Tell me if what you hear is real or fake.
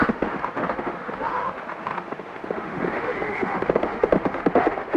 fake